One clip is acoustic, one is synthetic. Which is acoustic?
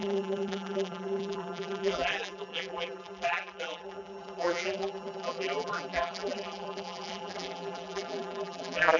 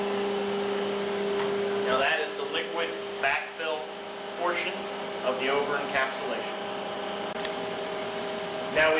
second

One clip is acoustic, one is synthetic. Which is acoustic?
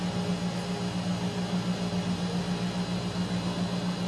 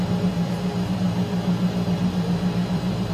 first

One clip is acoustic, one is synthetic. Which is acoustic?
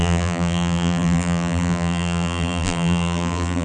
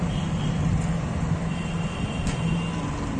second